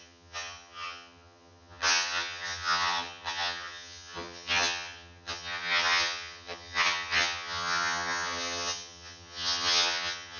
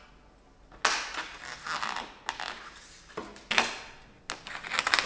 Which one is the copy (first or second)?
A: first